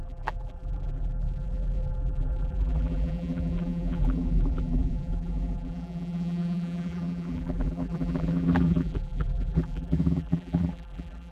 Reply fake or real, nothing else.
fake